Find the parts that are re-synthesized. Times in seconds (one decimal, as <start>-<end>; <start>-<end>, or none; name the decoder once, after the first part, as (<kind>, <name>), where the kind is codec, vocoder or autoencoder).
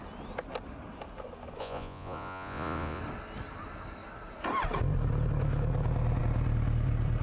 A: 1.6-3.0 (vocoder, Vocos)